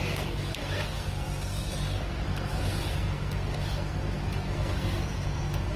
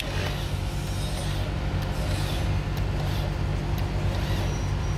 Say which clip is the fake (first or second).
first